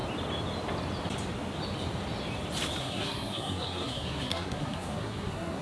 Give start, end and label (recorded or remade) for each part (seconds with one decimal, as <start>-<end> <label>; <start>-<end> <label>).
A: 0.0-2.8 recorded; 2.8-5.6 remade